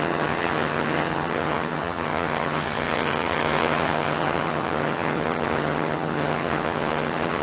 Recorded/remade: remade